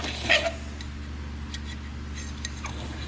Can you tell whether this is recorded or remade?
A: recorded